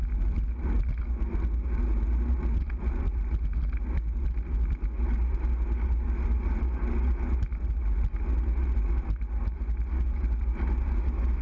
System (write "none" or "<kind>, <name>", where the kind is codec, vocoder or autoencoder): none